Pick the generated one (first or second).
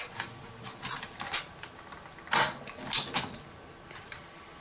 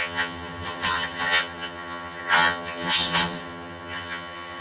second